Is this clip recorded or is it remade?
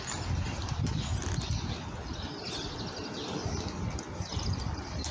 recorded